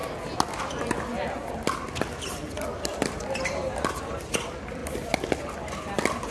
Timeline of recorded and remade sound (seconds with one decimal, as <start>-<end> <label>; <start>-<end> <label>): 0.0-6.3 recorded